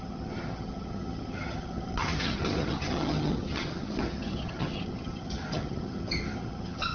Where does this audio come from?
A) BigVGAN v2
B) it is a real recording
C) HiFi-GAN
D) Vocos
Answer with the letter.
C